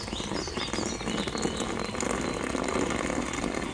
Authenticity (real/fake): real